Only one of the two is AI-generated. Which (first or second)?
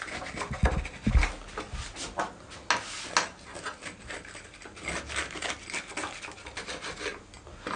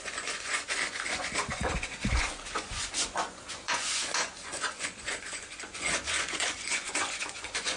second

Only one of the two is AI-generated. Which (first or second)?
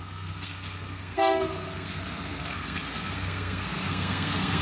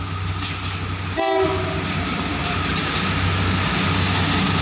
first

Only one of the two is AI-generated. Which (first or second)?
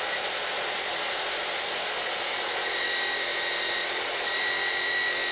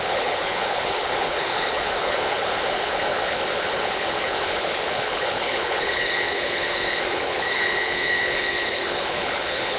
second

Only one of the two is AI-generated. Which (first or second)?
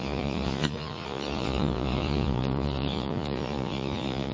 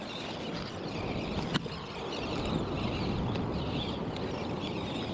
first